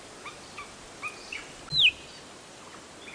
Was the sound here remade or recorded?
recorded